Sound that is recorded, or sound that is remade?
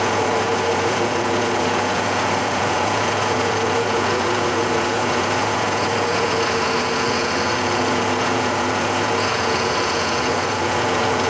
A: remade